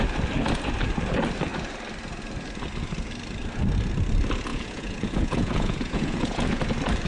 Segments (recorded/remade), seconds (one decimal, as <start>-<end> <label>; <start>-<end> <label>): 0.0-4.5 recorded; 4.5-6.6 remade; 6.6-7.1 recorded